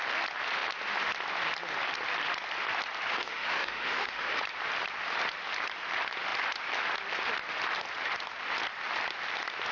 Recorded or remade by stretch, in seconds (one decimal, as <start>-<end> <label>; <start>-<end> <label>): 0.0-3.1 recorded; 3.1-4.4 remade; 4.4-9.7 recorded